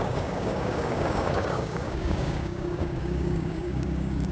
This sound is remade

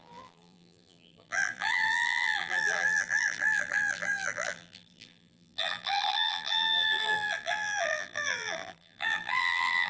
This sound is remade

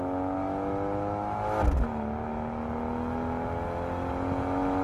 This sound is recorded